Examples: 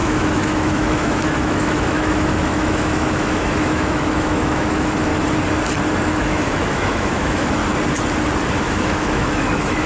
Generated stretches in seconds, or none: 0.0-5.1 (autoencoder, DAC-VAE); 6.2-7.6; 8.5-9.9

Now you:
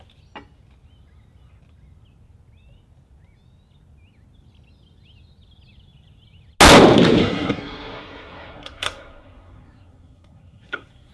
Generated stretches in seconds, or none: 7.2-11.1 (codec, SNAC)

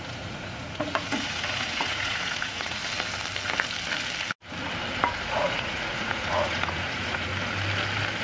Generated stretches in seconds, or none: 0.0-2.8 (vocoder, Vocos); 5.2-7.3

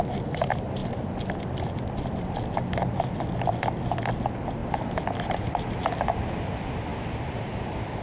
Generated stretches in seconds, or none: 0.0-6.9 (vocoder, BigVGAN v2); 7.6-8.0

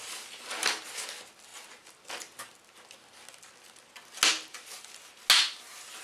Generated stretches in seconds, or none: none

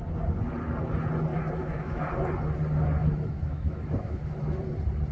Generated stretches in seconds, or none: 1.3-2.0 (autoencoder, DAC-VAE); 3.0-4.6